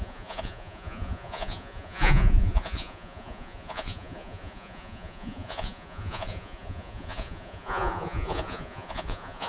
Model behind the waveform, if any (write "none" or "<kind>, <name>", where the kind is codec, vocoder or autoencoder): vocoder, Vocos